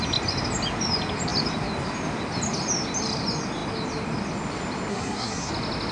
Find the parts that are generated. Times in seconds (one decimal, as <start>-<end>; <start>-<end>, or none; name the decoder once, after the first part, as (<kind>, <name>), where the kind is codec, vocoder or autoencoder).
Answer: 4.9-5.5 (codec, SNAC)

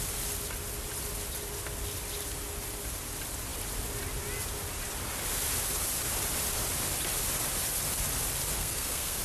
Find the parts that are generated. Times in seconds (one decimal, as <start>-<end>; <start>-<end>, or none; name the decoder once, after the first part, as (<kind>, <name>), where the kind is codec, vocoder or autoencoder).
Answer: 8.6-9.2 (codec, SNAC)

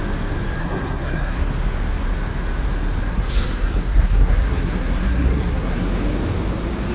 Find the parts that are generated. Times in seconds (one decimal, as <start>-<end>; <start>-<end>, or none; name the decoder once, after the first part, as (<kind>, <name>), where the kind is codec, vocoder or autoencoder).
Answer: 0.6-1.5 (codec, SNAC); 3.1-5.9

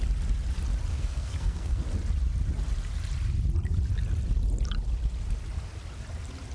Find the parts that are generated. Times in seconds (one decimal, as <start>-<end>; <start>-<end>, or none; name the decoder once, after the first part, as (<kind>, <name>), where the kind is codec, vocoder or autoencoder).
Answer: 0.9-1.8 (codec, SNAC)

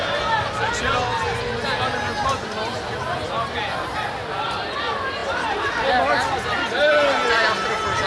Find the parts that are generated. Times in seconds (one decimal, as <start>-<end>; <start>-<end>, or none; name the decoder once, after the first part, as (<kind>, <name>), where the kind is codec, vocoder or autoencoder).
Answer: none

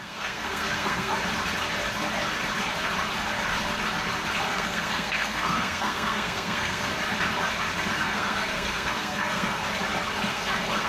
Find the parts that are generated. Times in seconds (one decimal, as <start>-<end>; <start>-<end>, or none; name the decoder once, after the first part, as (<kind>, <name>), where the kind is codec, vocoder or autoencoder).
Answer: 0.0-1.1 (codec, SNAC); 4.5-6.9; 7.9-9.6; 10.3-10.9

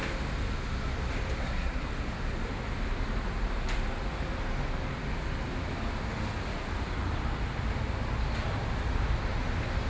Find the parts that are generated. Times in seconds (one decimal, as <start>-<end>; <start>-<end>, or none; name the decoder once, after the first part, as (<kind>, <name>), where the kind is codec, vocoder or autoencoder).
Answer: 1.4-1.9 (codec, SNAC)